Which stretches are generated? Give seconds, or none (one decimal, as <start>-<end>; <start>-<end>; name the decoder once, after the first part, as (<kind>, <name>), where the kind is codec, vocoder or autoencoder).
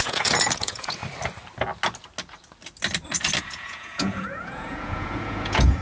0.0-1.0 (vocoder, Vocos); 3.4-5.8